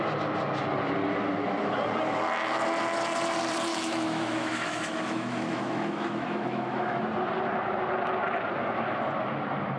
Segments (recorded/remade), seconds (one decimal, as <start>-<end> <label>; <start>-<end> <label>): 0.0-3.7 recorded; 3.7-7.0 remade; 7.0-9.8 recorded